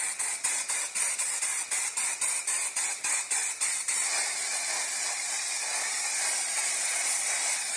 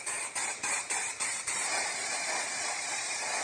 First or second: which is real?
first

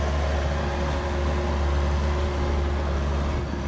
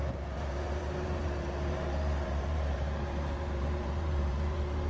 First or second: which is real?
first